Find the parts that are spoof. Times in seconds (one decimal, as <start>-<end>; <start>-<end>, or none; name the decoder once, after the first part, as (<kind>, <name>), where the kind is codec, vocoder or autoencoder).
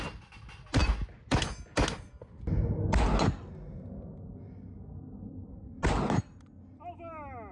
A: none